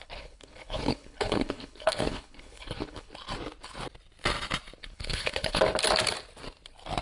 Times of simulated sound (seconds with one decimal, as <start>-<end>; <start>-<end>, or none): 0.0-3.1; 4.8-5.6